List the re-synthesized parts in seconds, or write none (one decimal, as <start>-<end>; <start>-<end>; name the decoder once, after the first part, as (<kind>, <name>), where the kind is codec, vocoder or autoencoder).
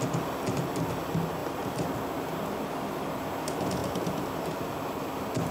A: none